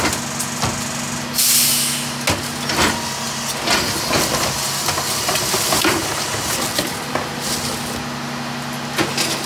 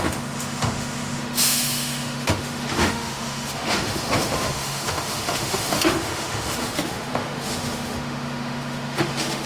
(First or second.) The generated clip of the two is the second